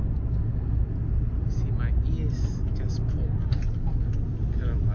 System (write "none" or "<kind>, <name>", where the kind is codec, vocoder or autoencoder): none